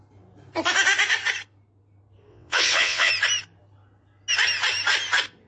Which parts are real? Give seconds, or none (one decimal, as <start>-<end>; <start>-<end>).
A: 0.0-2.3; 3.1-5.5